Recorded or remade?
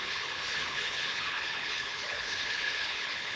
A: remade